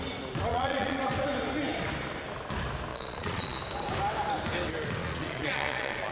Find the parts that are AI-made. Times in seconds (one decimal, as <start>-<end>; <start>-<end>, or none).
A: 0.5-1.0; 2.9-3.6; 5.0-6.1